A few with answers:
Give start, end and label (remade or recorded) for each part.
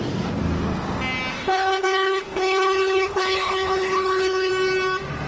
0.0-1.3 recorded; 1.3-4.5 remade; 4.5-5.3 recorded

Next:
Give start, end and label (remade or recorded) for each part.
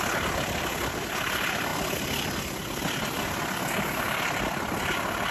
0.0-5.3 recorded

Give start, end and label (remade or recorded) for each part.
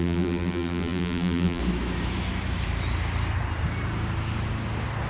0.0-1.6 remade; 1.6-5.1 recorded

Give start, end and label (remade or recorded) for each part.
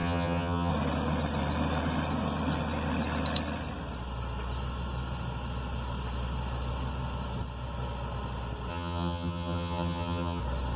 0.0-0.7 remade; 0.7-8.7 recorded; 8.7-10.4 remade; 10.4-10.8 recorded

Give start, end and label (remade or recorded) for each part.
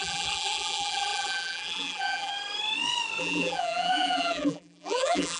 0.0-2.3 remade; 2.3-3.2 recorded; 3.2-5.4 remade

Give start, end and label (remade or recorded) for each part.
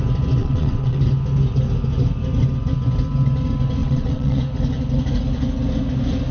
0.0-0.4 recorded; 0.4-1.0 remade; 1.0-3.8 recorded; 3.8-4.4 remade; 4.4-6.3 recorded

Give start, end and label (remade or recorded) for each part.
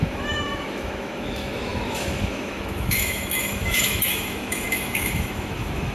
0.0-5.9 remade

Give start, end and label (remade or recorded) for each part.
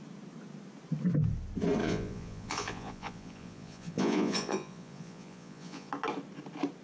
0.0-1.8 recorded; 1.8-5.9 remade; 5.9-6.8 recorded